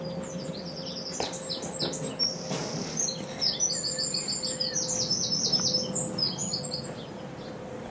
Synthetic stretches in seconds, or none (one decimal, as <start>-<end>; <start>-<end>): none